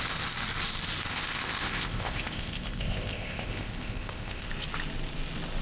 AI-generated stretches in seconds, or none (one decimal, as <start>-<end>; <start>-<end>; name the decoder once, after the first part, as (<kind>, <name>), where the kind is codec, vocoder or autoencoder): 1.1-4.5 (codec, ZipCodec)